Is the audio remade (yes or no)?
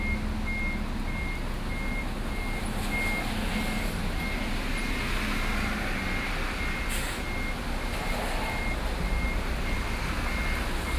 no